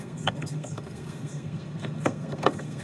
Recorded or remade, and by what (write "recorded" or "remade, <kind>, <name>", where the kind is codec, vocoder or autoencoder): remade, codec, SNAC